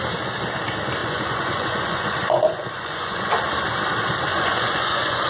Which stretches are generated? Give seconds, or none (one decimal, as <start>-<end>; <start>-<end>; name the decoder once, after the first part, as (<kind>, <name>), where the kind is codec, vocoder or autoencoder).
1.0-3.3 (vocoder, Vocos); 4.3-5.3